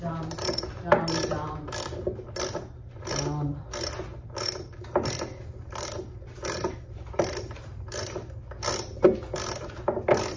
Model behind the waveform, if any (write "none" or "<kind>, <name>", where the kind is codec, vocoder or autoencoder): none